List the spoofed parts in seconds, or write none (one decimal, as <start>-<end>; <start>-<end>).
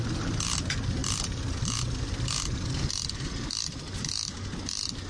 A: none